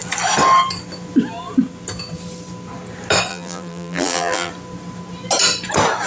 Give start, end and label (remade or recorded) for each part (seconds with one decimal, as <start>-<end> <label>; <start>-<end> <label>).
0.0-3.3 recorded; 3.3-4.5 remade; 4.5-6.1 recorded